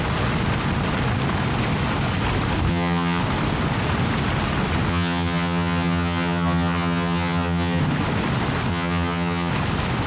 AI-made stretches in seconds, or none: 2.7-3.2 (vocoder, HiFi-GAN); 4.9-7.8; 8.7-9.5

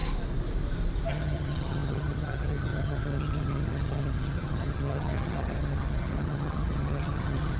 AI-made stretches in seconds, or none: 1.1-7.6 (vocoder, HiFi-GAN)